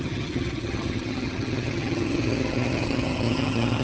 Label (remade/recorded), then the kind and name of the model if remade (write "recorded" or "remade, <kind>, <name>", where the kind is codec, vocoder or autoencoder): remade, vocoder, HiFi-GAN